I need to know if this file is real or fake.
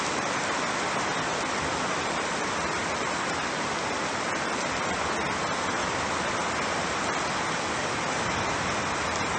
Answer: real